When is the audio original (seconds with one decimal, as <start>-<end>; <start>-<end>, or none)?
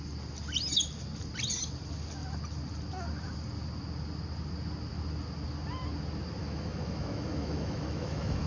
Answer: 0.0-6.4